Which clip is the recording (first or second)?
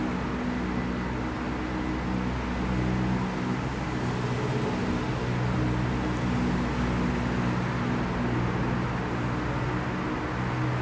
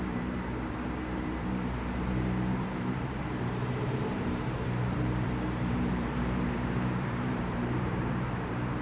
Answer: first